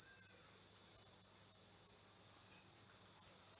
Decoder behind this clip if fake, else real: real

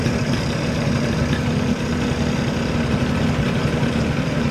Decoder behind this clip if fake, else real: real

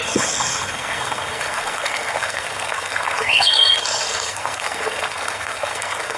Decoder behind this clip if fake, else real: fake, codec, SNAC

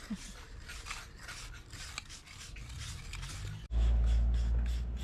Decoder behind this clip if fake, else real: real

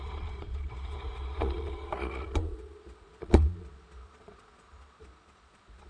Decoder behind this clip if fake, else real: fake, vocoder, Vocos